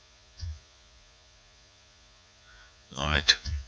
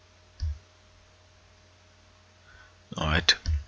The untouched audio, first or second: second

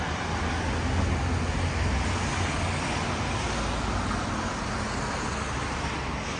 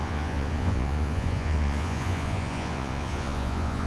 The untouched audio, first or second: first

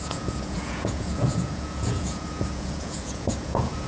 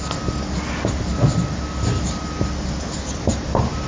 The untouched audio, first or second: second